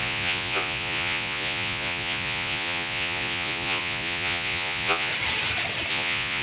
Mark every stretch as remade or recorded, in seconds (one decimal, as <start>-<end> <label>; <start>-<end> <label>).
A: 0.0-5.1 remade; 5.1-5.9 recorded; 5.9-6.4 remade